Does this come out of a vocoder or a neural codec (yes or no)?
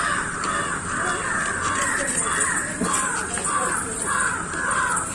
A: yes